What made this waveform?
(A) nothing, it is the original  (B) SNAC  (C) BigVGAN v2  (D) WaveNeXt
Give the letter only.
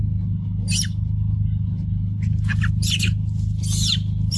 A